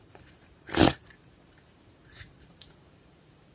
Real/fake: fake